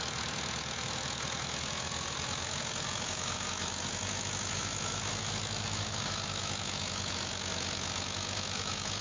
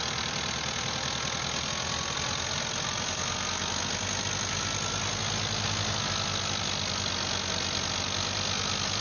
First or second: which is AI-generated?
first